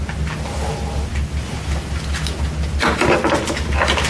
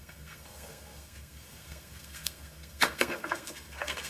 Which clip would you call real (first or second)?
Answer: first